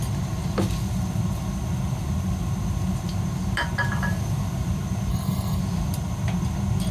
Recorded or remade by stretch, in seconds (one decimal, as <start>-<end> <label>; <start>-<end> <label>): 0.0-5.1 recorded; 5.1-5.6 remade; 5.6-6.9 recorded